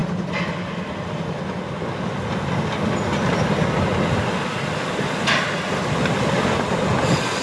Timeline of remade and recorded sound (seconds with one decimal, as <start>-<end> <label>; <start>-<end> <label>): 0.0-7.4 recorded